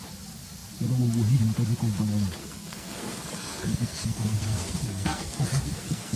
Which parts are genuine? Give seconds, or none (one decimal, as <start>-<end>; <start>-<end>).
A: 0.0-2.4